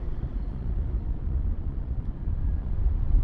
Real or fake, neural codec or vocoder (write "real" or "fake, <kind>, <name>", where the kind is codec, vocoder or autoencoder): fake, vocoder, Vocos